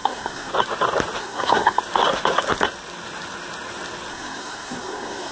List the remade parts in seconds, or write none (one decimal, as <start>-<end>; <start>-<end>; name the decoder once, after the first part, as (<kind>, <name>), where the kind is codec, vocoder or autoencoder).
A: 0.0-0.5 (codec, SNAC); 1.2-1.8; 4.1-5.3